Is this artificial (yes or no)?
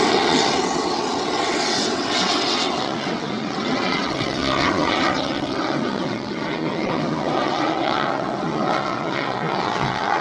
yes